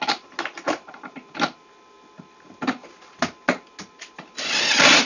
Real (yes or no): yes